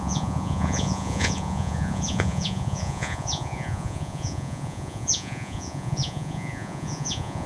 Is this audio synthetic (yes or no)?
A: yes